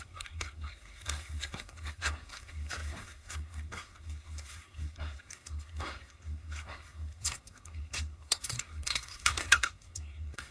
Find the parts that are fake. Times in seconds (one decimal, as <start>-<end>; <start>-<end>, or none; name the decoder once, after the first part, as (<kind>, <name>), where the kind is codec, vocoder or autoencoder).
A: 0.0-10.5 (codec, SNAC)